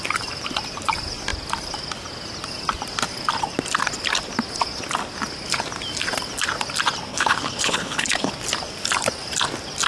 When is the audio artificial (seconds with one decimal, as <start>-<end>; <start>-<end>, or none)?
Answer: 7.1-8.3